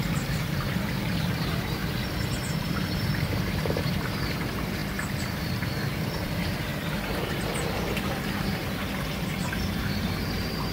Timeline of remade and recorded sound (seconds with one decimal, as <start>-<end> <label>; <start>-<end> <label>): 0.0-1.8 remade; 1.8-2.4 recorded; 2.4-8.6 remade; 8.6-9.2 recorded; 9.2-10.7 remade